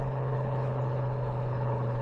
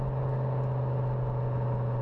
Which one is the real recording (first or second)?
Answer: second